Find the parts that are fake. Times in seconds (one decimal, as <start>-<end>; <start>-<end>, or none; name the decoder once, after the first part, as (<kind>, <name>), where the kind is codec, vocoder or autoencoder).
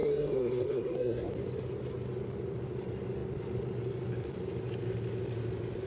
0.0-1.3 (codec, SNAC)